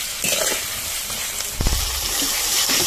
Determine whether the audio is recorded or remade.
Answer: recorded